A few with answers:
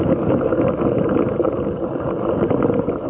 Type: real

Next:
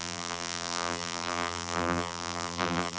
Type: fake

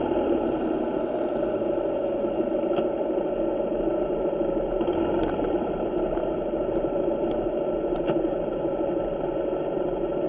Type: real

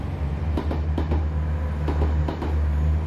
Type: real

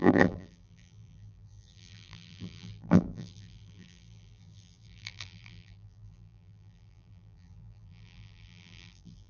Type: fake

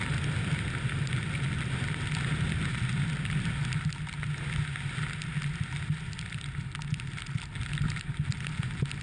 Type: real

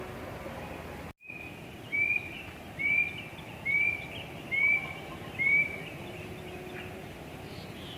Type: real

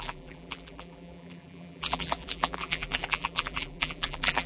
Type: fake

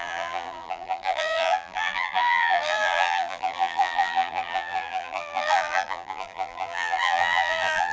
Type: fake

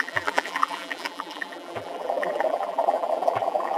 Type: fake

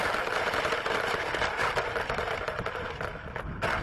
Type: real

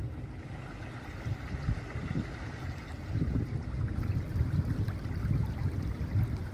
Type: real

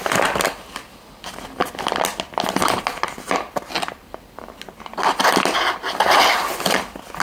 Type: real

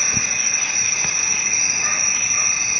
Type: real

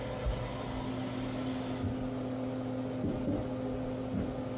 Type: real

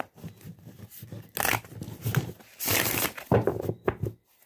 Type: real